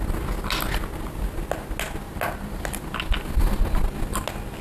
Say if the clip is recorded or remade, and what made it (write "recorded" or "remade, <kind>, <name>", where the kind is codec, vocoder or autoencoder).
recorded